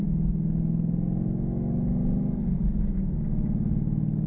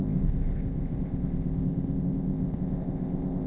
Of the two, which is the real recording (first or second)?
first